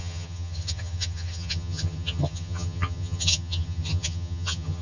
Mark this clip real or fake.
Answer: fake